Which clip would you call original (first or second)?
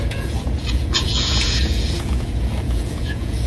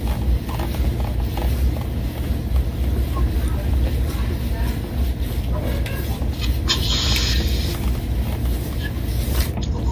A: second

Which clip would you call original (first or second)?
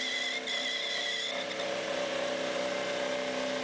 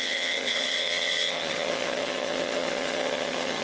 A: first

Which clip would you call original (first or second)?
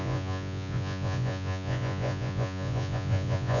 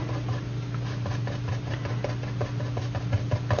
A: second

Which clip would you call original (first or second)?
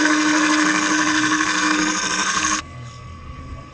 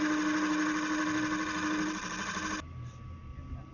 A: second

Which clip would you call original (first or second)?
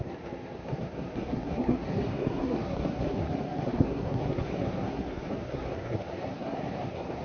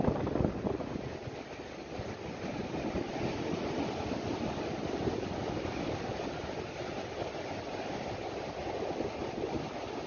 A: second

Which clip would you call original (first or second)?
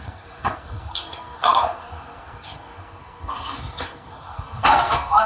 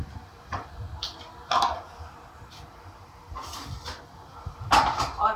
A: second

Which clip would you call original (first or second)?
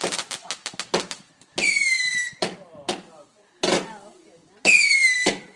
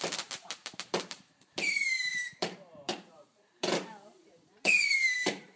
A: first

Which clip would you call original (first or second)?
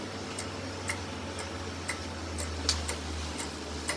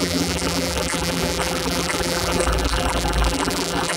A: first